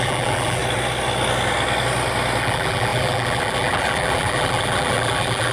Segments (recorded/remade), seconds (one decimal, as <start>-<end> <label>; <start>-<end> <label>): 0.0-0.6 remade; 0.6-2.4 recorded; 2.4-5.5 remade